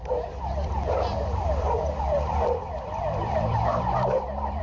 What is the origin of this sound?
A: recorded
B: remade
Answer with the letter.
B